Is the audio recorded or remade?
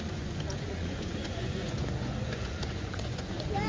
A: remade